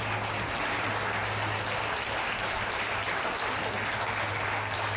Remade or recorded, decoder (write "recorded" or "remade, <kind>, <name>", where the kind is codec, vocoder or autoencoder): recorded